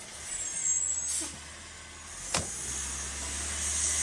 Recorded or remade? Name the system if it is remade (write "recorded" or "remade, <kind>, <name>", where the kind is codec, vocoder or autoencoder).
recorded